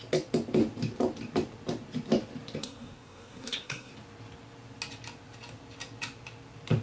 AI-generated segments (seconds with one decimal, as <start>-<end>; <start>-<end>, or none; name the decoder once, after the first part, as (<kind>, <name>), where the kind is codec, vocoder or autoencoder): 2.6-3.9 (codec, SNAC)